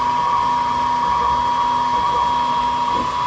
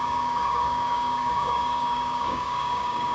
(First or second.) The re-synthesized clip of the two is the second